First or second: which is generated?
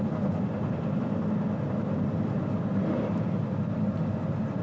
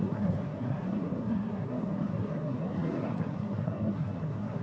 second